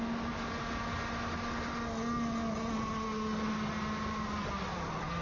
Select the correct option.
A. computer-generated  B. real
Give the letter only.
B